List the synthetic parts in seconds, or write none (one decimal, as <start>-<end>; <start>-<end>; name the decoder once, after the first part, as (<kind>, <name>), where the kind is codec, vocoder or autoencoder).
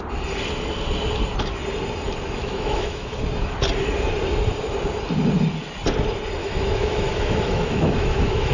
2.4-3.2 (autoencoder, DAC-VAE); 6.4-8.5